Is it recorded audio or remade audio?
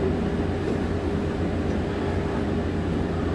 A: recorded